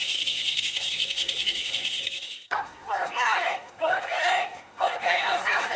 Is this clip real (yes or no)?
no